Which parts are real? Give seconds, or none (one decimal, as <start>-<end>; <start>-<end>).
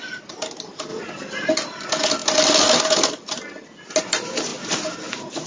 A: 0.0-5.5